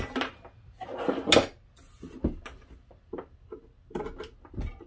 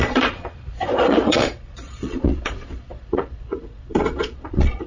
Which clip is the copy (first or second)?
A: second